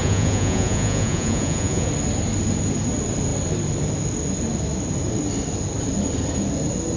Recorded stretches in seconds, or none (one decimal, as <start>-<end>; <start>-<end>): 1.9-7.0